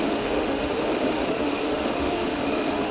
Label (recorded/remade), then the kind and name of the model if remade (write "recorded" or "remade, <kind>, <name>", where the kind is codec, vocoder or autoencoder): remade, autoencoder, DAC-VAE